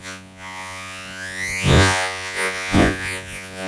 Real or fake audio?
fake